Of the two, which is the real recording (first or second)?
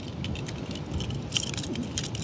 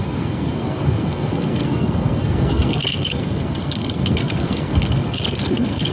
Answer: first